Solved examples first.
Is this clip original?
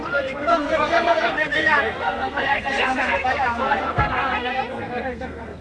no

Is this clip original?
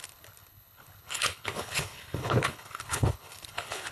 no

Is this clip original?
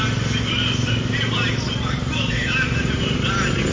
yes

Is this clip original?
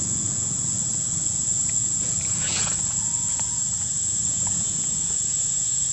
no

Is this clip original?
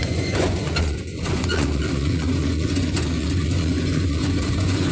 no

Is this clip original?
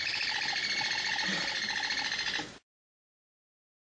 yes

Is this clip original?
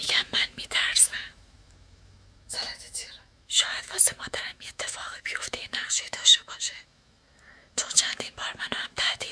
no